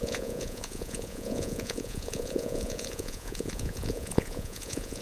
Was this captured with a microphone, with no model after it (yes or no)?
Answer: no